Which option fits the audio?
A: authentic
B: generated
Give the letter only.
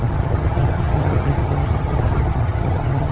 B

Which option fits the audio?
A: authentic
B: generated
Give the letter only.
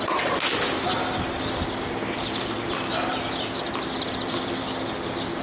A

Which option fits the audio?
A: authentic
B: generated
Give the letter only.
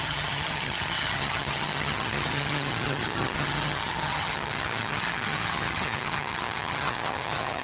B